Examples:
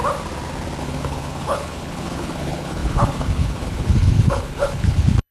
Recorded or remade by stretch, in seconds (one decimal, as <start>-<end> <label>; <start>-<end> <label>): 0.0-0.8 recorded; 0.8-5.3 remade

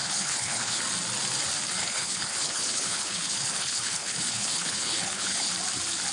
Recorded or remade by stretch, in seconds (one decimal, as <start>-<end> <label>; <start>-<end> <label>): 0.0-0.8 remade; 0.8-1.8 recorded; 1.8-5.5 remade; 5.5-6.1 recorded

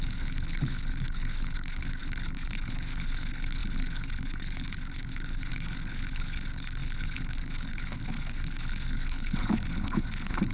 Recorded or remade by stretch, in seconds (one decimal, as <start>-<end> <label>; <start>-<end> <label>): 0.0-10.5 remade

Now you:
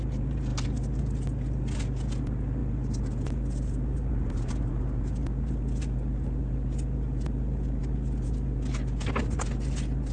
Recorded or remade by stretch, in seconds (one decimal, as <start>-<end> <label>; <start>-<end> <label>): 0.0-10.1 recorded